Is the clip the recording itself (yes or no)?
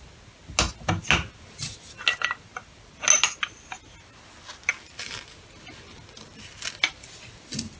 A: yes